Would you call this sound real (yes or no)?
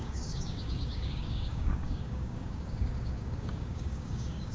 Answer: no